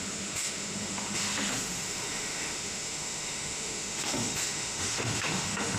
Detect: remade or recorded remade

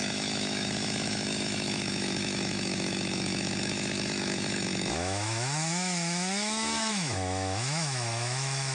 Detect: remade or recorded remade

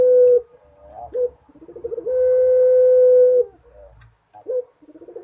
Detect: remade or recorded recorded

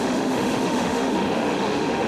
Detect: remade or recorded remade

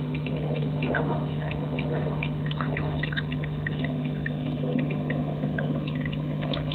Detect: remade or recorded remade